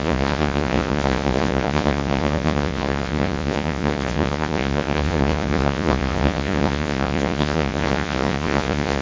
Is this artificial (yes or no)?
yes